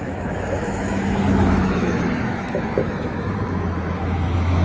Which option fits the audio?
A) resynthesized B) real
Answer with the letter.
A